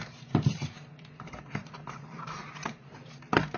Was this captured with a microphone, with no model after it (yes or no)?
no